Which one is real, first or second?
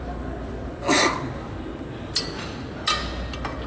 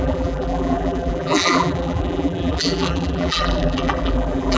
first